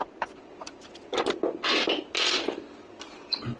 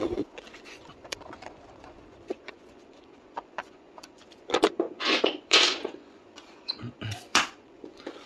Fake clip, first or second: second